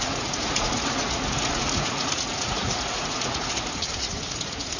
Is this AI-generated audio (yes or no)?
yes